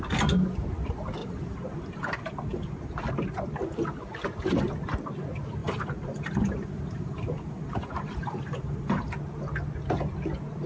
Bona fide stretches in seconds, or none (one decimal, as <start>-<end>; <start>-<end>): 0.0-1.2; 3.1-5.6; 9.1-10.7